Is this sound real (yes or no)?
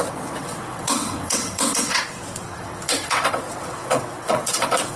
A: no